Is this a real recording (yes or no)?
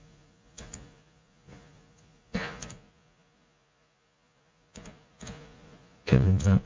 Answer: no